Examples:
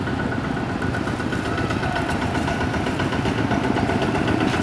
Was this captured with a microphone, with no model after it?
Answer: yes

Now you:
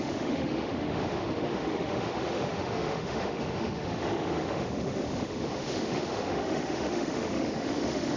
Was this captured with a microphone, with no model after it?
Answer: no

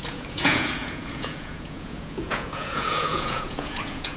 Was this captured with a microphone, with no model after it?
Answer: no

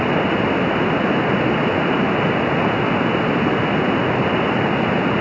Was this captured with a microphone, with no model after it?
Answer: yes